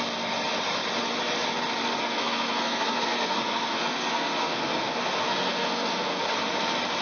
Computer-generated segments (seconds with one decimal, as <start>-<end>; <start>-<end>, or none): 2.0-6.2